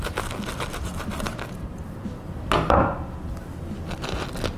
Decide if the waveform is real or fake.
real